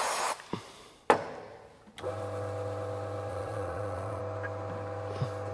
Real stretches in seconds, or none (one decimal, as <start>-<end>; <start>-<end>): 0.0-3.3; 4.2-5.5